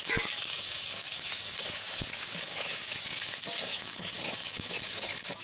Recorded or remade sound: remade